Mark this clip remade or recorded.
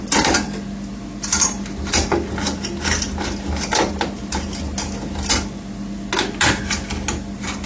recorded